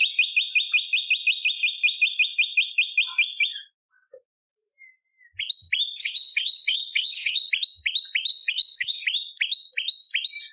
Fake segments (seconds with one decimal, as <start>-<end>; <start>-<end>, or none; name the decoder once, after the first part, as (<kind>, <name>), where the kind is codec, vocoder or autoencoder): 6.0-7.5 (codec, HILCodec); 8.3-9.0